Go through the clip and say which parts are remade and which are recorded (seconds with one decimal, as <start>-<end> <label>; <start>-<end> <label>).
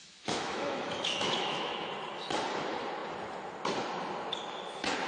0.0-1.9 remade; 1.9-5.1 recorded